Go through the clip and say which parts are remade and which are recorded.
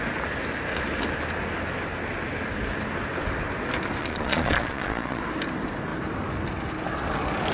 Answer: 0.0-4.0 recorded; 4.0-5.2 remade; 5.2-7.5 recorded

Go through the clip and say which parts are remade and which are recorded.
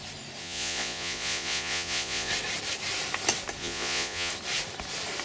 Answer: 0.0-0.4 recorded; 0.4-2.3 remade; 2.3-3.6 recorded; 3.6-4.3 remade; 4.3-5.2 recorded